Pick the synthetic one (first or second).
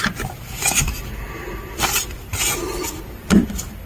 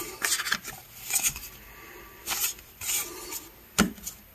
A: first